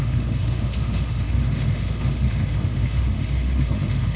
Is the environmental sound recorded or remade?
remade